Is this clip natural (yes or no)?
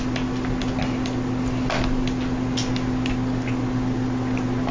yes